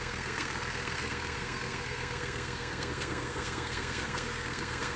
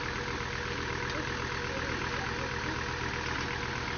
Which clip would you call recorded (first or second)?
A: second